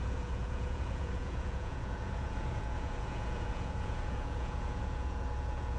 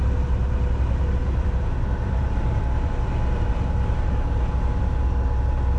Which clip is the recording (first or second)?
second